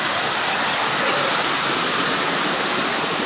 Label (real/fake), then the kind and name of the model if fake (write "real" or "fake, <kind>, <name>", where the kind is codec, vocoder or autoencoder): real